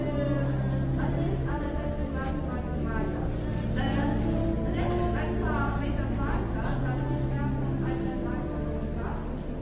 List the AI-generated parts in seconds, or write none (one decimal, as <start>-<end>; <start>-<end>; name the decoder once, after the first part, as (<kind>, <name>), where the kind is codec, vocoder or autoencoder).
0.9-1.9 (vocoder, BigVGAN v2)